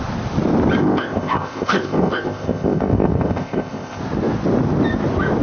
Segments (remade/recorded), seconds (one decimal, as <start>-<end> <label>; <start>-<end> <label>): 0.0-0.8 recorded; 0.8-4.0 remade; 4.0-5.4 recorded